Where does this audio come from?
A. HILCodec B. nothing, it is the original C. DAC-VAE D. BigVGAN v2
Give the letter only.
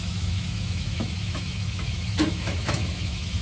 C